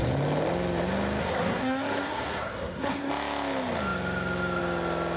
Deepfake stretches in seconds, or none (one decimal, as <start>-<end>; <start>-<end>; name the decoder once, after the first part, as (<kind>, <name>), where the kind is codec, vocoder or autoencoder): 1.2-3.1 (codec, SNAC)